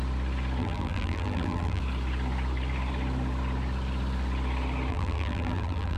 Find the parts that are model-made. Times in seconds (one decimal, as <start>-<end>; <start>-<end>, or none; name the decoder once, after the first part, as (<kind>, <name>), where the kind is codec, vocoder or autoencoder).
0.6-1.8 (vocoder, BigVGAN v2); 4.9-6.0